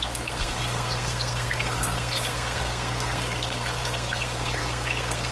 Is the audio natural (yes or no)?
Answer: no